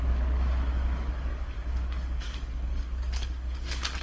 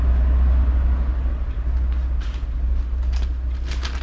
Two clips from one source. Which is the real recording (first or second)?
second